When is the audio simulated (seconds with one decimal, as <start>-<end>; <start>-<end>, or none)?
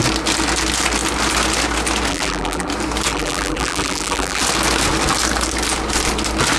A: 2.1-2.7; 3.1-4.4